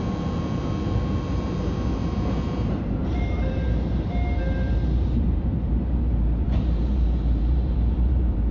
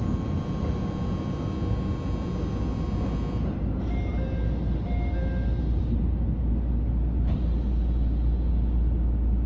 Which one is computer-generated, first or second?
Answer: first